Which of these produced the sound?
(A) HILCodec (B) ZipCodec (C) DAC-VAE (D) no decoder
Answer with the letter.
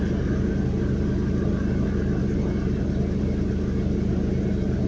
D